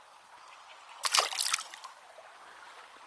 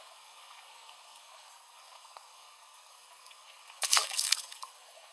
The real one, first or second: first